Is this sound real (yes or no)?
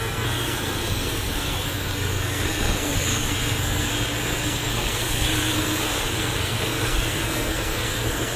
no